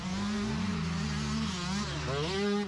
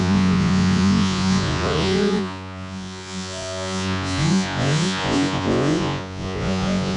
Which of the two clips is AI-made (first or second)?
second